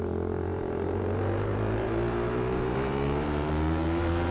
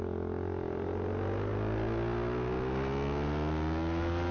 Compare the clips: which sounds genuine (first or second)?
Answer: second